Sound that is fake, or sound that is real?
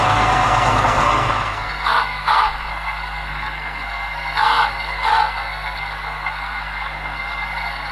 fake